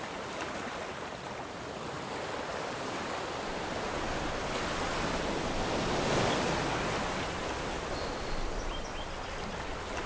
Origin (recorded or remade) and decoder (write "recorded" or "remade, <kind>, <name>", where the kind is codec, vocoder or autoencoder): recorded